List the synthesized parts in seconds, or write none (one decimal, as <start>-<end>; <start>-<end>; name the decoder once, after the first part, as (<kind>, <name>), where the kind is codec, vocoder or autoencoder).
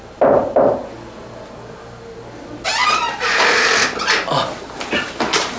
none